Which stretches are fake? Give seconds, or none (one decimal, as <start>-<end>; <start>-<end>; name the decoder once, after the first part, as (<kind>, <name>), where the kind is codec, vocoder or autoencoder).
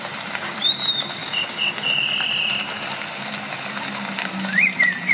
0.0-1.2 (vocoder, BigVGAN v2); 4.3-5.1